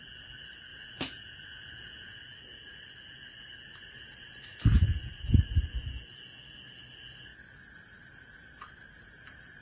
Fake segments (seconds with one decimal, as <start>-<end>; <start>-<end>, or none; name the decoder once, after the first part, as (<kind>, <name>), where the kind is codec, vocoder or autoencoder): 0.7-2.2 (vocoder, Vocos); 4.5-5.6